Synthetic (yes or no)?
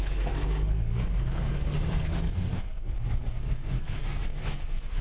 yes